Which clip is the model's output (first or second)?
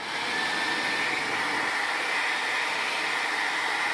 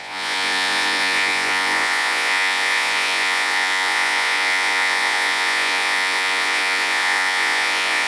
second